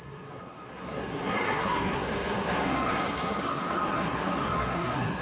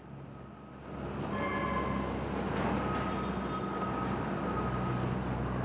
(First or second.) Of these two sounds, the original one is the second